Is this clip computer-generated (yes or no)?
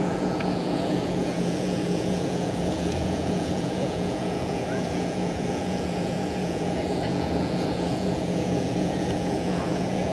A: yes